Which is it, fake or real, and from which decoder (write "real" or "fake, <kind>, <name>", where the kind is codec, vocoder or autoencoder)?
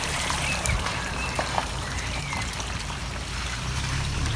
fake, vocoder, BigVGAN v2